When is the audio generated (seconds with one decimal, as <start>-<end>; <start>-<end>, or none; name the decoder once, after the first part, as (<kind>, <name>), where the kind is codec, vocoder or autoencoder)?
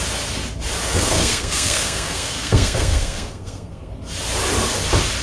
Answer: 0.8-3.9 (codec, SNAC)